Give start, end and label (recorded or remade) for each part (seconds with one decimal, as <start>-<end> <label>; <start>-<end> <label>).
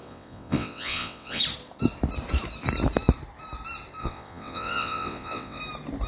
0.0-1.4 remade; 1.4-4.0 recorded; 4.0-5.6 remade; 5.6-6.1 recorded